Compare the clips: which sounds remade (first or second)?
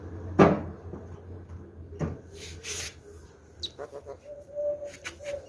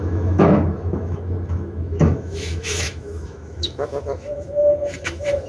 second